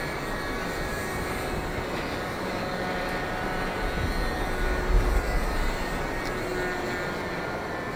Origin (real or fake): real